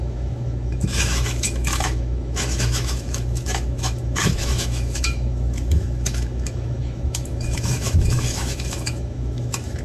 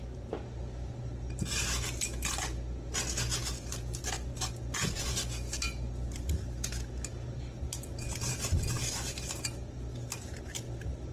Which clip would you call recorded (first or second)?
second